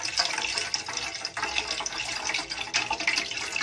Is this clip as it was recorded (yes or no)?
yes